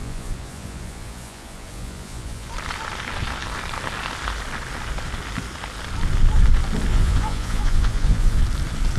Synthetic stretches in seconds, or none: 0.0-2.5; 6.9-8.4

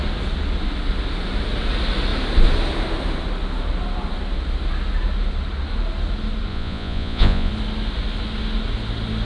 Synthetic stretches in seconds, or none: 6.5-7.5

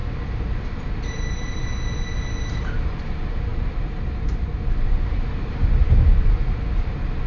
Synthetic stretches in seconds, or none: 0.9-1.7; 2.5-7.3

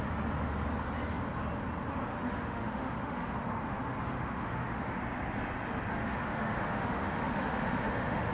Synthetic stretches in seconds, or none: 2.1-5.0; 5.9-8.3

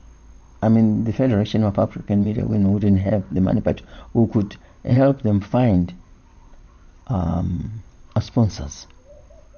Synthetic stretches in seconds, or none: 2.0-4.0; 4.9-7.3